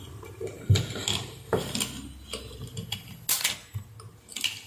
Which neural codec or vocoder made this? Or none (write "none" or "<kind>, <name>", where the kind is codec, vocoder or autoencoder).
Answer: none